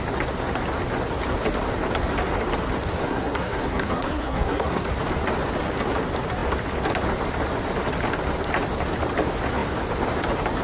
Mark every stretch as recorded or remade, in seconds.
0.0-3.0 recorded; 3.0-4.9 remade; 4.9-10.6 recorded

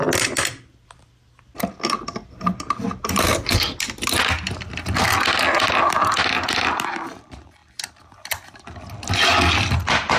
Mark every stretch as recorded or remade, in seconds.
0.0-10.2 recorded

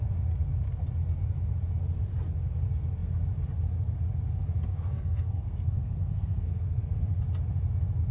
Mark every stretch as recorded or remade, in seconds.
0.0-4.7 recorded; 4.7-7.2 remade; 7.2-8.1 recorded

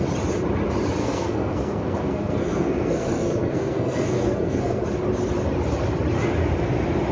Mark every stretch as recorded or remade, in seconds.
0.0-1.0 recorded; 1.0-4.8 remade; 4.8-7.1 recorded

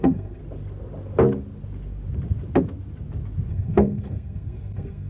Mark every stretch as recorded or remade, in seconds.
0.0-0.4 remade; 0.4-3.5 recorded; 3.5-5.1 remade